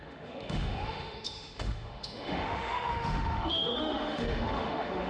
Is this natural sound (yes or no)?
no